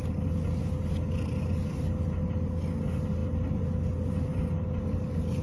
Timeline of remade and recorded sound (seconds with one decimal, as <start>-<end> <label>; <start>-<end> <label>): 0.0-5.4 recorded